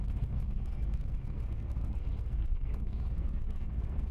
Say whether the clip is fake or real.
fake